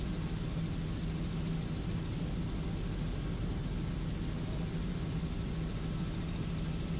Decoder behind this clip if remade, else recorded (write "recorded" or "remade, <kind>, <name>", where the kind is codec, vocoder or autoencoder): recorded